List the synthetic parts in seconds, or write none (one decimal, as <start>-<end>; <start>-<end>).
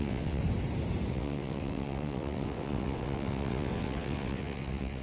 0.0-0.4; 1.1-5.0